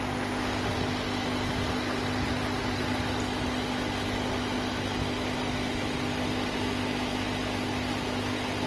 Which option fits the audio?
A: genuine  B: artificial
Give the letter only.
A